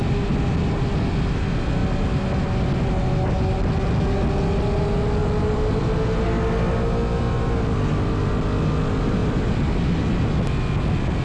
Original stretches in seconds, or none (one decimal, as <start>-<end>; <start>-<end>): 0.0-1.8; 2.4-5.2; 5.8-9.2; 10.3-11.2